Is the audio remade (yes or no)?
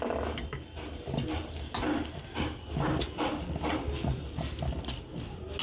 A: no